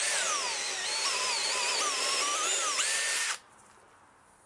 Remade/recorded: recorded